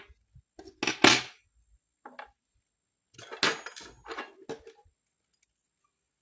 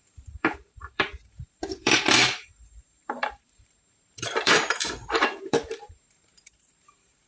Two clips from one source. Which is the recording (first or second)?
first